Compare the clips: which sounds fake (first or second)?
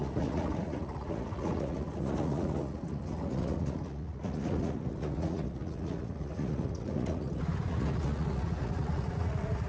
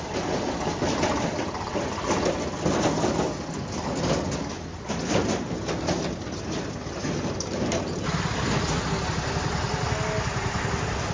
first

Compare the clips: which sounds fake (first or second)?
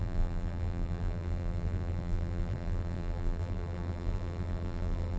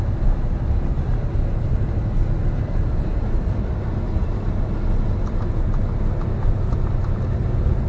first